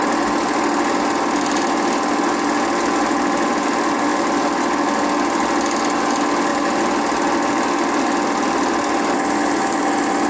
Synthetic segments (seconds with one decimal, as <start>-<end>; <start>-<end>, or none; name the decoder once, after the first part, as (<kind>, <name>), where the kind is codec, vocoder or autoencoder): none

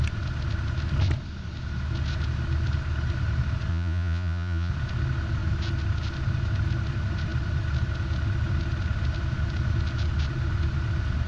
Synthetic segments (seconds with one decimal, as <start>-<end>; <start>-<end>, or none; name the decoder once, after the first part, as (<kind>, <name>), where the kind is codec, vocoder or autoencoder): 3.7-4.7 (vocoder, Vocos)

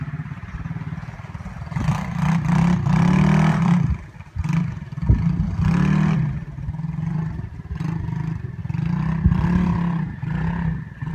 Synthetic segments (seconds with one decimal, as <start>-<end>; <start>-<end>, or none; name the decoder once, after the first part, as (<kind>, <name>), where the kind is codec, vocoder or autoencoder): none

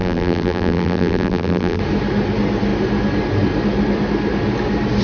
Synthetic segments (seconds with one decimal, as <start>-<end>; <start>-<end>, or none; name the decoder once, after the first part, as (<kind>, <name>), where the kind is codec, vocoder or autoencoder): 0.0-1.8 (vocoder, BigVGAN v2)

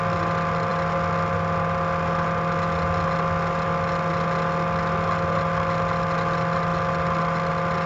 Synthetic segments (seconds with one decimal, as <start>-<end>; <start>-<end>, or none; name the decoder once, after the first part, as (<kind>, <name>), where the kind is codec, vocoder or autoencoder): none

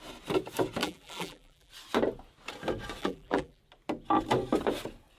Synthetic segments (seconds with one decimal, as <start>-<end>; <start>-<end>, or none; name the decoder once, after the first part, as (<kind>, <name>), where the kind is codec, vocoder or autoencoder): 0.8-1.7 (vocoder, BigVGAN v2); 3.0-3.6

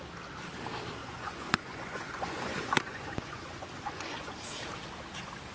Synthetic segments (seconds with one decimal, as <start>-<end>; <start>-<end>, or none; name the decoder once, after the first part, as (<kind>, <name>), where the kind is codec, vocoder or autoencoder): 1.0-4.3 (vocoder, Vocos)

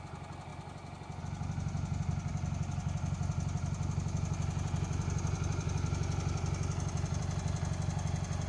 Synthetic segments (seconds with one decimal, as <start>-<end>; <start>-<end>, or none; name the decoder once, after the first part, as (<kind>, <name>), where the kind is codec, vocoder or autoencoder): none